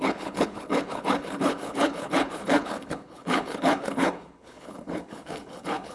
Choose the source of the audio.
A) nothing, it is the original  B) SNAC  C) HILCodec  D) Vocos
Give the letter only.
C